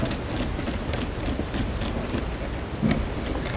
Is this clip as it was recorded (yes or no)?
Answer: yes